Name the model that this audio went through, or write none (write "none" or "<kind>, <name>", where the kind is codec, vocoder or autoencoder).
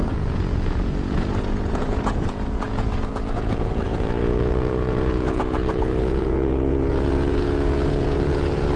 vocoder, Vocos